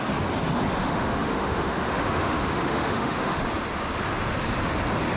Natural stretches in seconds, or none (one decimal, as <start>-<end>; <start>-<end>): 0.0-0.8; 3.4-5.2